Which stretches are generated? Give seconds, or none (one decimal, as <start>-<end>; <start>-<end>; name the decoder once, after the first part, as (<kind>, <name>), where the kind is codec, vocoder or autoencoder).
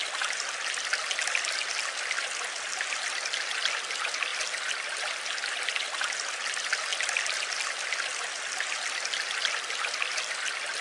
none